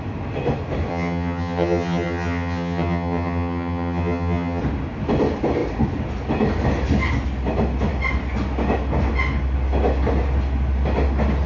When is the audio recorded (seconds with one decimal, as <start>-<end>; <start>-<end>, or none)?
0.0-0.9; 4.6-11.5